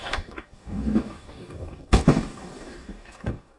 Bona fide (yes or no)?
no